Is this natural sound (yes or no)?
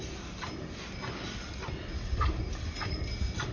yes